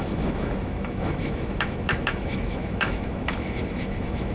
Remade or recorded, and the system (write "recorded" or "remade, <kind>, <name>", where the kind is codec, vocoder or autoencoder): remade, autoencoder, DAC-VAE